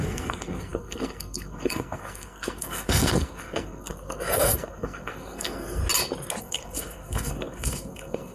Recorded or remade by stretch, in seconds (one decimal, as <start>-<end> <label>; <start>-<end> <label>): 0.0-5.8 remade; 5.8-6.4 recorded; 6.4-8.3 remade